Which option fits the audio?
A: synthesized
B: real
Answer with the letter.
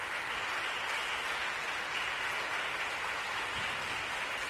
B